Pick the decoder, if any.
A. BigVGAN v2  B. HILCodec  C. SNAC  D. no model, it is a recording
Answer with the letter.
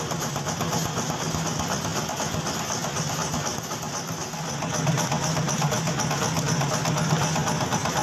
D